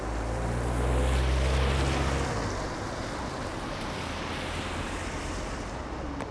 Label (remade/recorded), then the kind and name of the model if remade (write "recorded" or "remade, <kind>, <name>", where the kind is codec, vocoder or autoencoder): recorded